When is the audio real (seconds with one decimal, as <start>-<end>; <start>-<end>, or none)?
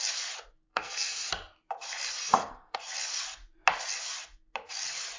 0.0-0.7; 1.3-2.2; 2.8-5.2